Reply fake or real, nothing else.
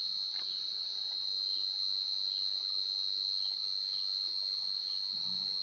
real